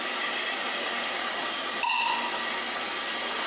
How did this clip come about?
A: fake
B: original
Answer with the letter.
B